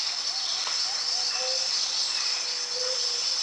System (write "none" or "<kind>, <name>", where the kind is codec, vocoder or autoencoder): none